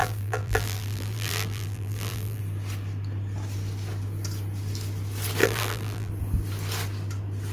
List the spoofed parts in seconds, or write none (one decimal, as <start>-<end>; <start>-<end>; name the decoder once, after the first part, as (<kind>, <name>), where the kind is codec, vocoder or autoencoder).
0.0-2.4 (vocoder, BigVGAN v2); 5.4-6.1